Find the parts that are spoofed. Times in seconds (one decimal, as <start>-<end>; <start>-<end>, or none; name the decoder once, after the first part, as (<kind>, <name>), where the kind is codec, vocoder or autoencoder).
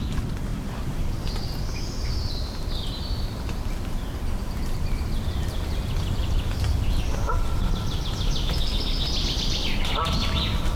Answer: none